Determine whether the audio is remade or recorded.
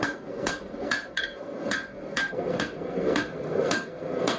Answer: remade